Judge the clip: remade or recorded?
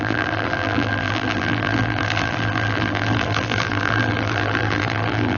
remade